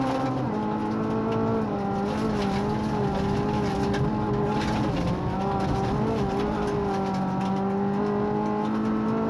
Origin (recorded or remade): recorded